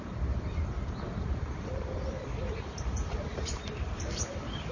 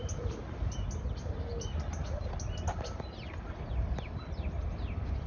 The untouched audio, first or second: second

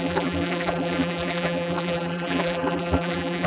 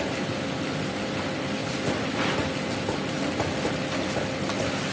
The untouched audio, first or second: second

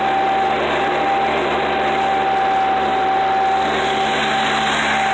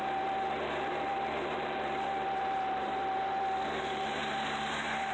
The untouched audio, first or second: first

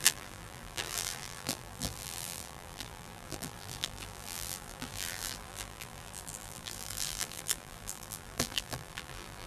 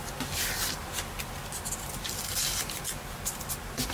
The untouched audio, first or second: second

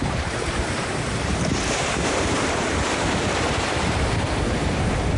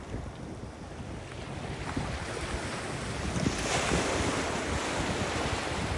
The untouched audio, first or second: second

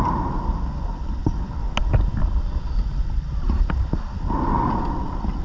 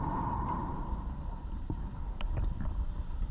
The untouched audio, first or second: first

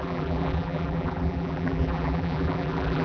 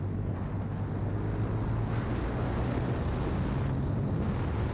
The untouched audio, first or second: second